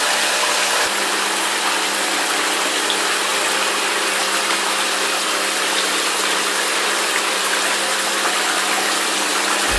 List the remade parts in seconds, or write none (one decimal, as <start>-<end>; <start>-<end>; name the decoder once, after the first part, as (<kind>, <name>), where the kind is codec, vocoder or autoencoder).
0.0-3.3 (vocoder, BigVGAN v2); 4.1-9.8